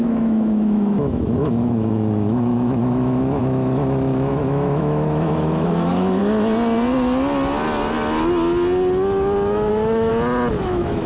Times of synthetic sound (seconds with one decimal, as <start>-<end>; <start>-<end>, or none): 0.0-6.2; 9.7-10.1; 10.6-11.1